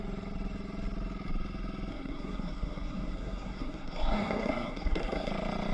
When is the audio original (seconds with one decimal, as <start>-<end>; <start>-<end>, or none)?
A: 0.0-1.9; 5.3-5.7